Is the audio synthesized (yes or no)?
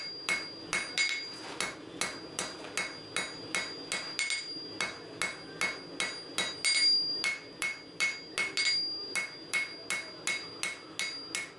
no